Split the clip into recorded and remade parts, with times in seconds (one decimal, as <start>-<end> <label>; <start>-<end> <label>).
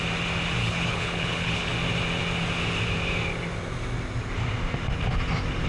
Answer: 0.0-0.6 recorded; 0.6-1.7 remade; 1.7-5.7 recorded